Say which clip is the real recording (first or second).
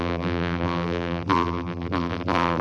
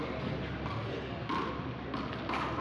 second